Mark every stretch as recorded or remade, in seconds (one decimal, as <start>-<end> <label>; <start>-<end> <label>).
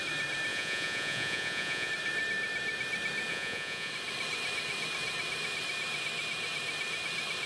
0.0-0.5 recorded; 0.5-1.9 remade; 1.9-3.3 recorded; 3.3-3.9 remade; 3.9-7.5 recorded